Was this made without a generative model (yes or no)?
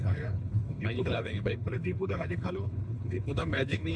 no